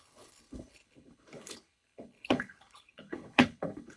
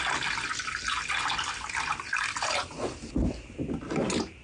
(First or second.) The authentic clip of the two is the second